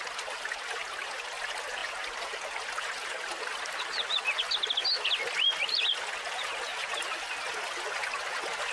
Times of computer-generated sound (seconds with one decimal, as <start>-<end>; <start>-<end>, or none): 6.7-7.2